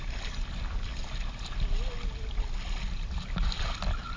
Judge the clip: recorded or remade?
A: recorded